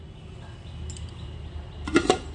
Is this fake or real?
real